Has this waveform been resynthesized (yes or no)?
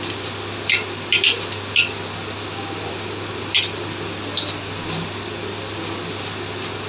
no